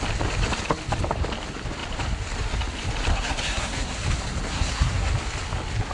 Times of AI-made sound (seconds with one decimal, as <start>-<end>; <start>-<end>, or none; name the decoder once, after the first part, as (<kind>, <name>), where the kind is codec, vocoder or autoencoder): 3.1-4.0 (codec, SNAC); 4.5-5.1